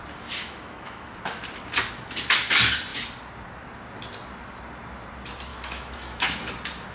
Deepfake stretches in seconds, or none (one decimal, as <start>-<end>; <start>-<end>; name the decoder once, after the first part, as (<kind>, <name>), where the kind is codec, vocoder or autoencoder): 0.4-1.1 (autoencoder, DAC-VAE); 5.5-6.4